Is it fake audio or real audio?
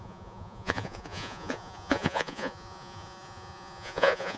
fake